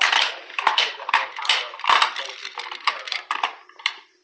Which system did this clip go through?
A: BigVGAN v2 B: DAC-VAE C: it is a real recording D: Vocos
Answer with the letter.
A